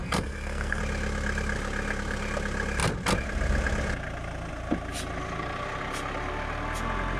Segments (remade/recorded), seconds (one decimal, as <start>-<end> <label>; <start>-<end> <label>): 0.0-0.8 remade; 0.8-7.2 recorded